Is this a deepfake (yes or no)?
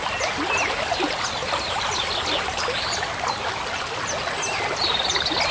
no